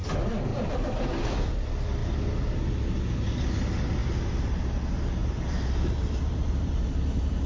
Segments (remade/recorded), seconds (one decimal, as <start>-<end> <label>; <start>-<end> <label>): 0.0-0.5 recorded; 0.5-1.1 remade; 1.1-5.2 recorded; 5.2-7.5 remade